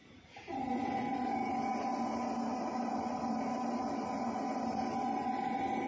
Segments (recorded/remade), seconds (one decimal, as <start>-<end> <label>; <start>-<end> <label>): 0.0-0.6 remade; 0.6-5.9 recorded